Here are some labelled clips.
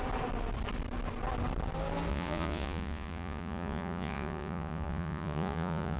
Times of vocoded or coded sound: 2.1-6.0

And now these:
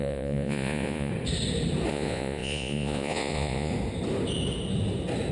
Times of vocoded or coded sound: 0.0-1.1; 1.9-3.7

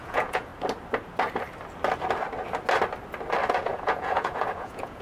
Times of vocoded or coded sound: 0.0-0.5; 3.5-5.0

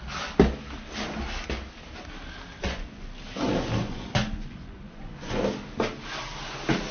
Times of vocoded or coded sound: 2.6-3.2; 3.8-5.4

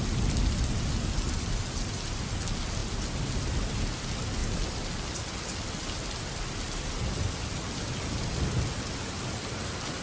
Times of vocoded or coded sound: none

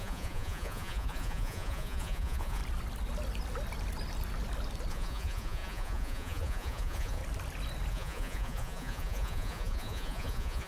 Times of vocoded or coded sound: 0.0-2.6; 4.9-7.2; 7.9-10.7

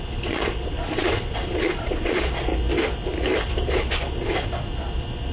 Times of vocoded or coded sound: 0.0-2.5; 3.5-5.3

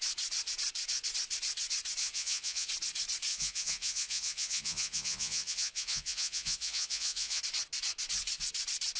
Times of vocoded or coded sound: 2.0-2.7; 3.3-7.4